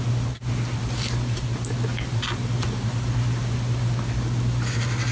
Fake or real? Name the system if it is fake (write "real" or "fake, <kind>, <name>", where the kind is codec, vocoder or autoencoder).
real